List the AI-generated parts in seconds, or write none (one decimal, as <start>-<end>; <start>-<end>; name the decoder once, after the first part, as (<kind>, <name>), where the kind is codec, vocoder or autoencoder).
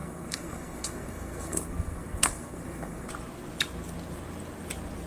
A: 0.0-3.1 (codec, SNAC)